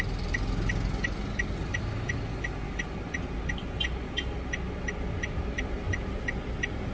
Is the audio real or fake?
real